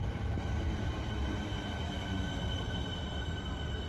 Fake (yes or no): no